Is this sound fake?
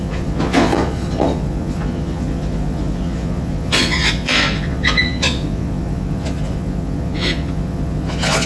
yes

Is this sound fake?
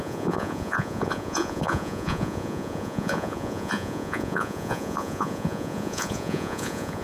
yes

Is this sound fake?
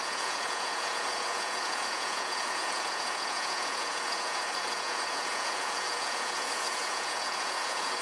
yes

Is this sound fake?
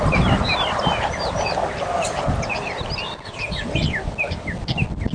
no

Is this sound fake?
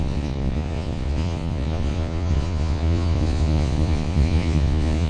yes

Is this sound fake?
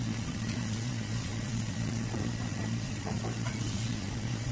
yes